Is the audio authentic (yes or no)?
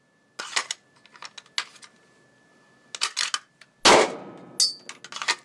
yes